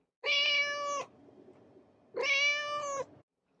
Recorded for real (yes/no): yes